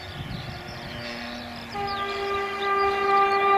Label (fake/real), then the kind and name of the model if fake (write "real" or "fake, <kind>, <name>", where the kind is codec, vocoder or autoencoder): real